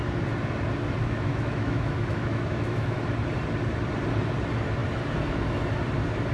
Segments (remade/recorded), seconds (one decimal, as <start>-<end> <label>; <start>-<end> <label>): 0.0-1.0 recorded; 1.0-3.0 remade; 3.0-6.3 recorded